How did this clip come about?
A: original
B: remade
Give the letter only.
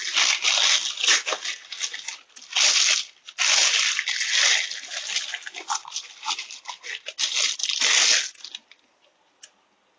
A